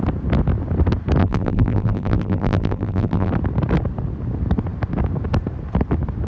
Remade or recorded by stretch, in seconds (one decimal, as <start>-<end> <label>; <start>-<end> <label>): 0.0-1.2 recorded; 1.2-3.3 remade; 3.3-6.3 recorded